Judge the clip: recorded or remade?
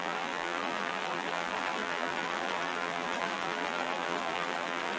remade